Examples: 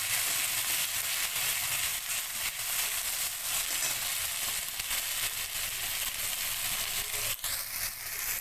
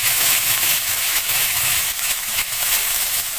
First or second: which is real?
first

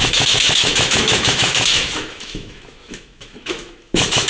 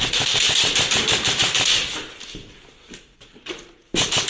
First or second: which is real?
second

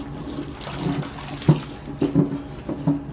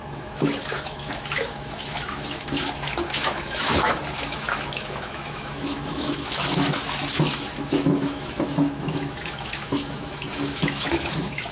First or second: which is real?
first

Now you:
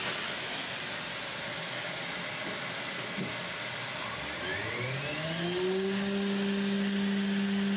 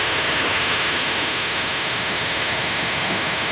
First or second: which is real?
first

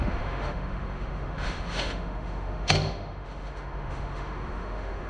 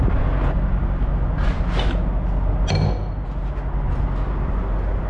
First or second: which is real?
second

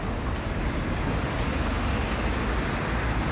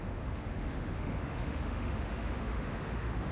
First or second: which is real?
first